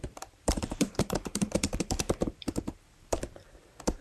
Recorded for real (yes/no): no